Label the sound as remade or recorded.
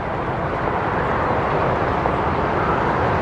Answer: recorded